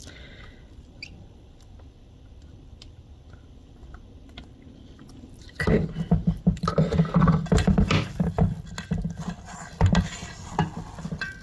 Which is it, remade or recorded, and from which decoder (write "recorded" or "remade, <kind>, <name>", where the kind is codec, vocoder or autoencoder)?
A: recorded